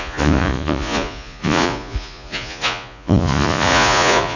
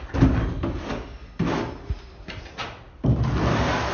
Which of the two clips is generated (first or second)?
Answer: first